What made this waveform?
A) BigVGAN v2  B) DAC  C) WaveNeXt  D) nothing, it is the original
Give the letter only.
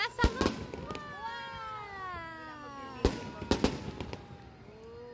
D